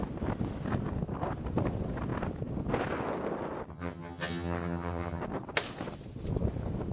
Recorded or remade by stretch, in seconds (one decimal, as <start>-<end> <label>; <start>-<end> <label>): 0.0-3.7 recorded; 3.7-5.2 remade; 5.2-6.9 recorded